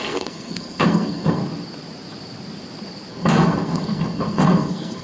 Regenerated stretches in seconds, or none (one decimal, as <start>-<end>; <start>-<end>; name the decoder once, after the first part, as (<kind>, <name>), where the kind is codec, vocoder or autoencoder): 0.0-1.4 (codec, SNAC); 3.1-5.0